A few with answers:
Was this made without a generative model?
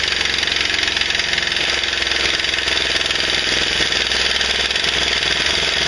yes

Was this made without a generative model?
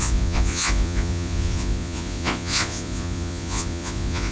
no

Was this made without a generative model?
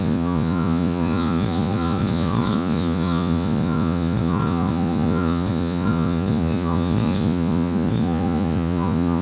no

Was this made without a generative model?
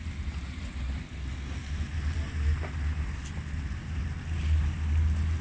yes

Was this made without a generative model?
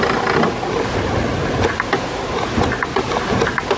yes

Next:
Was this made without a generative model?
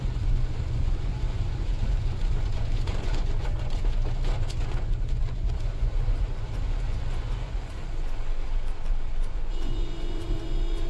no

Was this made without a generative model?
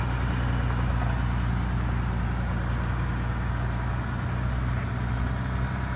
yes